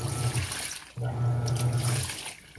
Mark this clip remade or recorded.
recorded